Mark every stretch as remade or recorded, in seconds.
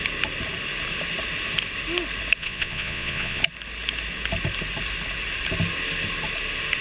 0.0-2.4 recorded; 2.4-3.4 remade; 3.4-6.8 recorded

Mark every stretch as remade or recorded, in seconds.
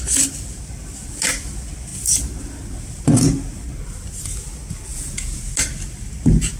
0.0-4.9 recorded; 4.9-5.4 remade; 5.4-6.6 recorded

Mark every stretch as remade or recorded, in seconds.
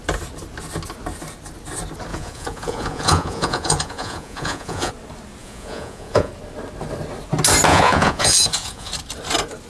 0.0-2.1 recorded; 2.1-4.9 remade; 4.9-5.4 recorded; 5.4-6.3 remade; 6.3-7.7 recorded; 7.7-8.9 remade; 8.9-9.7 recorded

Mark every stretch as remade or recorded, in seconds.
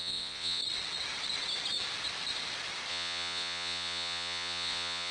0.0-0.6 remade; 0.6-2.9 recorded; 2.9-5.1 remade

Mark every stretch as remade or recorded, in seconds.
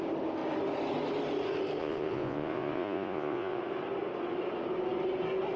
0.0-1.8 recorded; 1.8-3.6 remade; 3.6-5.6 recorded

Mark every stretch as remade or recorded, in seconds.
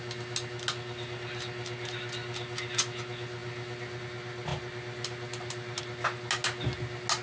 0.0-7.2 recorded